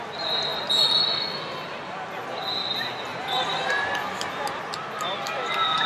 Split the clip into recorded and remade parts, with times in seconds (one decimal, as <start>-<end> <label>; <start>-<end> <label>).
0.0-3.1 recorded; 3.1-3.9 remade; 3.9-5.9 recorded